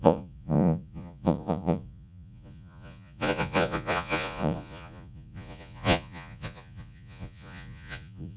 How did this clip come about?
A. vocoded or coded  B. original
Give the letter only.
A